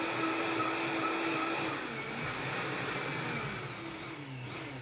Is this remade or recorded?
recorded